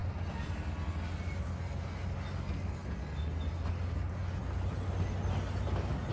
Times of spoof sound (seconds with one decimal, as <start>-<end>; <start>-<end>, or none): none